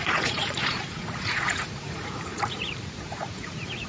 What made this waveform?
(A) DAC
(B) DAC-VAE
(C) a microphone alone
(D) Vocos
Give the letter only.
D